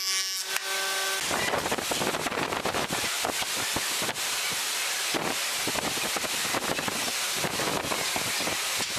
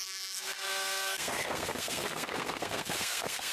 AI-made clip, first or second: second